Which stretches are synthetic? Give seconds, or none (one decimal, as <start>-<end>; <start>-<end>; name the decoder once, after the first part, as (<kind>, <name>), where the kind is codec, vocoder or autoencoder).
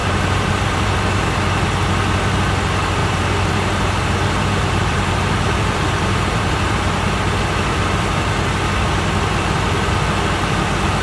0.0-0.9 (vocoder, BigVGAN v2); 3.0-7.1